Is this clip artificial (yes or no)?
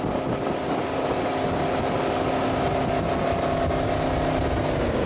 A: no